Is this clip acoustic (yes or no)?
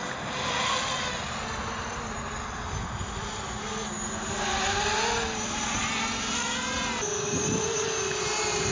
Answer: yes